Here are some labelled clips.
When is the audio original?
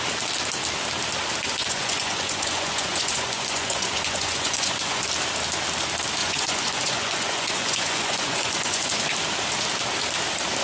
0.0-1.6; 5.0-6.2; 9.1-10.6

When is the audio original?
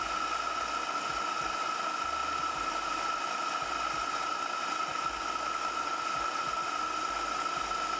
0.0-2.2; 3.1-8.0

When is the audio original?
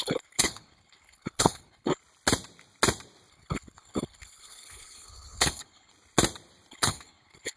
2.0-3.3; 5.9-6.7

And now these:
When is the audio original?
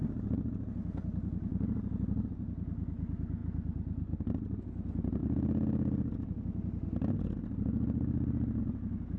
0.0-9.2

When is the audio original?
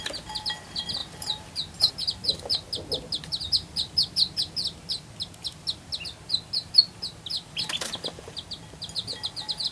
0.0-1.0; 1.9-9.7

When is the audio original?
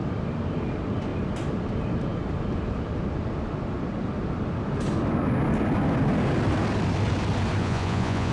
0.0-7.6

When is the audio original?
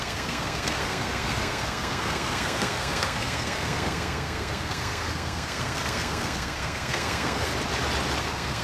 7.5-8.2